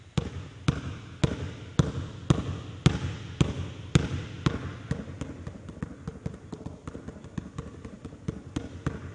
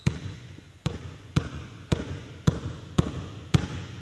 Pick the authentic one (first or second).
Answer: first